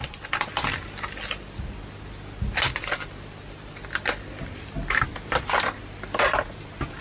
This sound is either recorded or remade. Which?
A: recorded